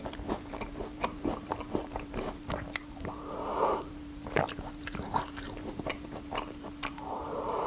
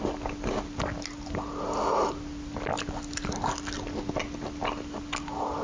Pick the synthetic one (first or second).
first